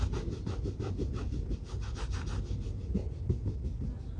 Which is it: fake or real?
real